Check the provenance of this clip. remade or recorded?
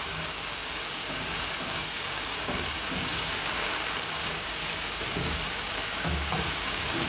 remade